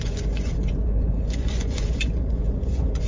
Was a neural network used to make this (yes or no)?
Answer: yes